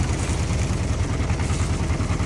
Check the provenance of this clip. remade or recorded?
recorded